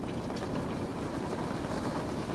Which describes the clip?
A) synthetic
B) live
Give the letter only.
B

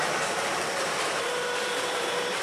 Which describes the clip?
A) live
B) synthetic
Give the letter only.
B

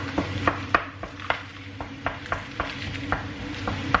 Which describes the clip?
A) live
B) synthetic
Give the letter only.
A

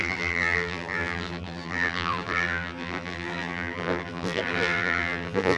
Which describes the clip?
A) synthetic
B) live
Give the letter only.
A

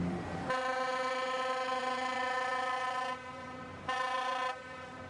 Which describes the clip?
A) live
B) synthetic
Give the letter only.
B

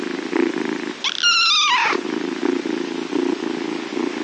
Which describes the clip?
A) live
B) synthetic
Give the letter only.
A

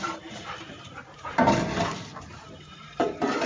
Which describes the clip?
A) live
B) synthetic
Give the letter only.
B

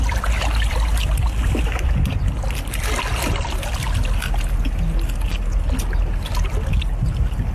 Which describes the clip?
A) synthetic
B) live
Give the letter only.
B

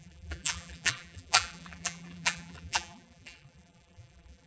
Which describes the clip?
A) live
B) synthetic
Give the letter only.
B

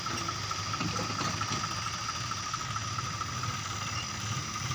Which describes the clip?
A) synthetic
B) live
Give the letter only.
A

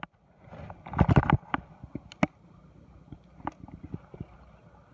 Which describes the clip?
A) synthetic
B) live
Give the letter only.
B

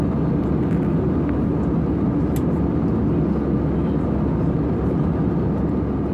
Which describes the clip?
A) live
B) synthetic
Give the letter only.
A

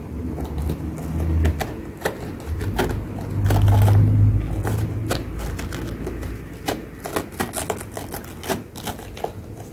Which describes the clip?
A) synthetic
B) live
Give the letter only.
B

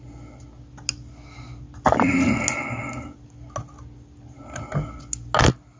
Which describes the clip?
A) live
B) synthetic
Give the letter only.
A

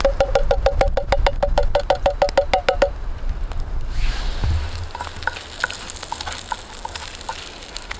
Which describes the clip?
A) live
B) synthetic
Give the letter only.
A